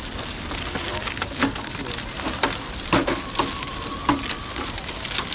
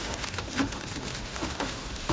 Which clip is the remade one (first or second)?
second